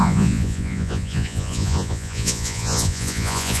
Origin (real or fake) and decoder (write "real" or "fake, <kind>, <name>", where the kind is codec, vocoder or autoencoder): fake, vocoder, Vocos